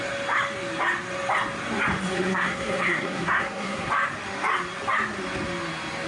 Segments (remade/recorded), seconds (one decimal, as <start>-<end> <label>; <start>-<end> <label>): 0.0-2.1 recorded; 2.1-3.9 remade; 3.9-6.1 recorded